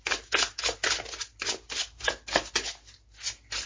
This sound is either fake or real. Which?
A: real